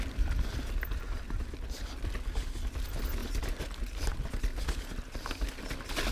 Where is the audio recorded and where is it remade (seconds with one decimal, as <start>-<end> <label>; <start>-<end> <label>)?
0.0-6.1 recorded